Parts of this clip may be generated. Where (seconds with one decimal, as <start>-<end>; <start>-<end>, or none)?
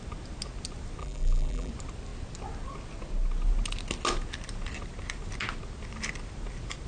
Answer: 1.0-1.7